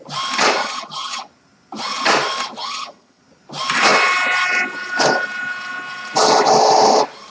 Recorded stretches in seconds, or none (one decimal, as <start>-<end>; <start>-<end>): 0.0-0.6; 1.3-2.6; 3.2-7.3

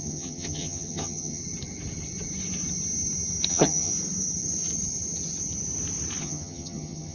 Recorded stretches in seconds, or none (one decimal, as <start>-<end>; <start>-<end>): 1.4-3.5; 3.9-6.2

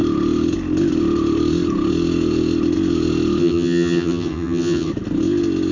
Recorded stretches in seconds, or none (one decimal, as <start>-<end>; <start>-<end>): 0.0-3.4; 4.9-5.7

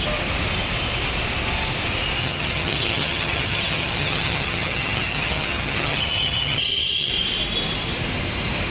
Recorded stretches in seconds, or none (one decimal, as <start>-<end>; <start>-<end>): 0.0-2.2; 7.1-8.7

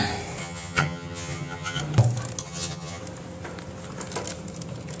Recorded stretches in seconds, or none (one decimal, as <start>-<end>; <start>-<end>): 0.0-0.4; 1.8-2.4; 3.0-5.0